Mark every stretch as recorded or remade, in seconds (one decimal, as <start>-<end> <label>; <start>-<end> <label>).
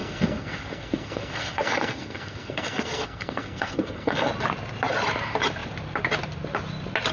0.0-4.3 remade; 4.3-7.1 recorded